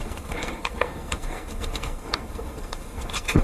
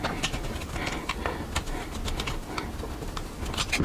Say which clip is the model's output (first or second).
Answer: first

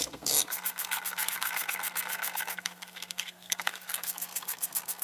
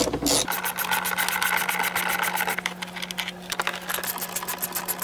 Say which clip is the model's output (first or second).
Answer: first